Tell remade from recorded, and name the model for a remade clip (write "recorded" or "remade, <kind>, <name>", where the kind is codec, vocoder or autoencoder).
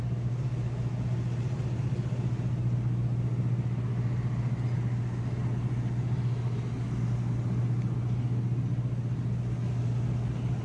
recorded